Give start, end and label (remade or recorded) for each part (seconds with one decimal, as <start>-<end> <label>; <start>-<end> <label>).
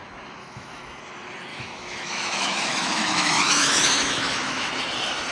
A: 0.0-0.4 recorded; 0.4-1.0 remade; 1.0-1.5 recorded; 1.5-4.7 remade; 4.7-5.3 recorded